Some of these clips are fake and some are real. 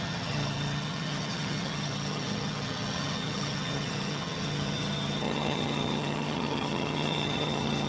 fake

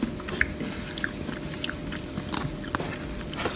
real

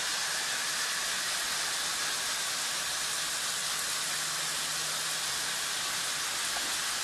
real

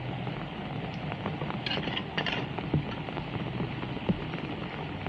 real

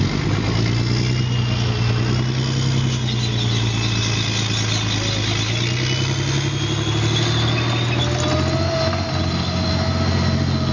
real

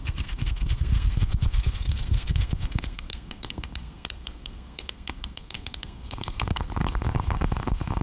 fake